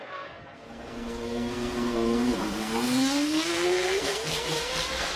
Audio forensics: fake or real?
fake